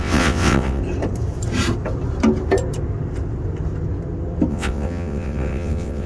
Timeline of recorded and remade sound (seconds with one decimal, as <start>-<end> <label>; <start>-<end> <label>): 0.0-0.8 remade; 0.8-4.5 recorded; 4.5-6.1 remade